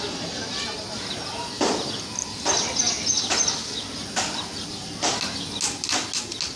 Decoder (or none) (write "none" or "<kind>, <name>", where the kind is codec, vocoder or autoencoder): none